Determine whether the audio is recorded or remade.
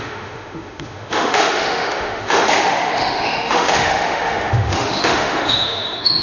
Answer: remade